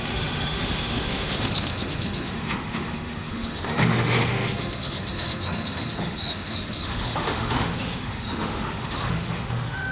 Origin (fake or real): fake